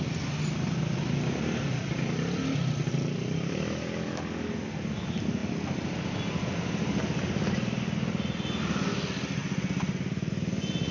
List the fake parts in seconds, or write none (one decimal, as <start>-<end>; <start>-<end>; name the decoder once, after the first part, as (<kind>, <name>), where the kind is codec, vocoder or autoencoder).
none

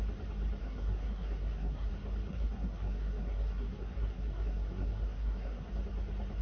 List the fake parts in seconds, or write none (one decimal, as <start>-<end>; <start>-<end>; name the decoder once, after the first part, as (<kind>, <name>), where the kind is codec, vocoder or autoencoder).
0.6-1.9 (codec, SNAC); 2.3-5.7

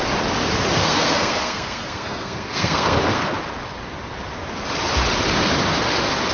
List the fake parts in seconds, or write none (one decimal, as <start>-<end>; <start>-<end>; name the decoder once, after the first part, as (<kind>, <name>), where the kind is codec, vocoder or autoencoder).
0.8-3.4 (codec, SNAC)

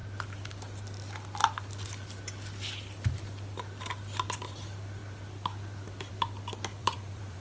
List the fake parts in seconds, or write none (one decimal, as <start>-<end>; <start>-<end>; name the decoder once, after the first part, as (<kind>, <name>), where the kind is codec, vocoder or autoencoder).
6.8-7.4 (vocoder, Vocos)